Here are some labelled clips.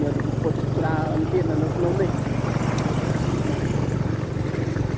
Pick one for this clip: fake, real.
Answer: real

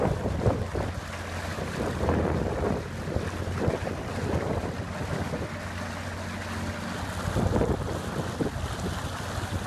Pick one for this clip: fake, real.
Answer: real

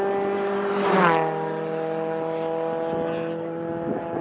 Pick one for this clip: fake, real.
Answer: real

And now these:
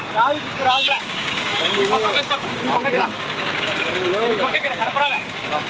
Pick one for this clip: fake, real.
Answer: fake